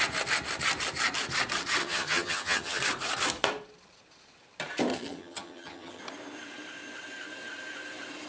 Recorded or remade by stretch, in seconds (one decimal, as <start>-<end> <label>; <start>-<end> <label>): 0.0-1.8 recorded; 1.8-2.8 remade; 2.8-4.9 recorded; 4.9-6.0 remade; 6.0-8.3 recorded